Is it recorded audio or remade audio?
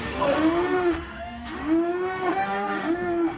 remade